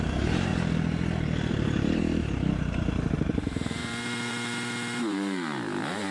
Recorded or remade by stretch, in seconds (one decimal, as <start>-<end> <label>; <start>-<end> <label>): 0.0-0.5 remade; 0.5-1.5 recorded; 1.5-6.1 remade